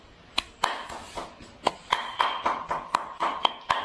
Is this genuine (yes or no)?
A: yes